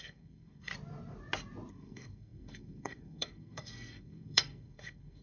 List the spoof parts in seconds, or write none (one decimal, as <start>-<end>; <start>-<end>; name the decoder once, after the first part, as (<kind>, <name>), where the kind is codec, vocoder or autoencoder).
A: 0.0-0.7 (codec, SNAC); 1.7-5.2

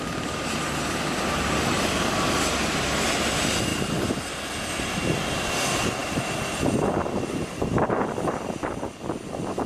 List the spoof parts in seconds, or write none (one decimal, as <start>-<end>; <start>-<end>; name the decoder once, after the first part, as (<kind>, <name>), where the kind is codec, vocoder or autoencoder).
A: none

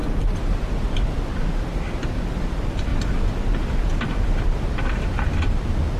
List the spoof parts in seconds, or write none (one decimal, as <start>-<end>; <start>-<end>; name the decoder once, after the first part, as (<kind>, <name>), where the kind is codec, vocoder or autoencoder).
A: none